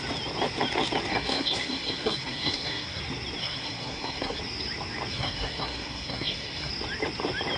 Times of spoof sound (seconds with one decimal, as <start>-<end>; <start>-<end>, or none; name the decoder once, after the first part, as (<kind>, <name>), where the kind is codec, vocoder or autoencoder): 1.1-3.0 (codec, SNAC); 3.4-4.4; 5.1-6.7